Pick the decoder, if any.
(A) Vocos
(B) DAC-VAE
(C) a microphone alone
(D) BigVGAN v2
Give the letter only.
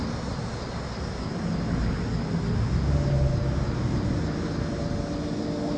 C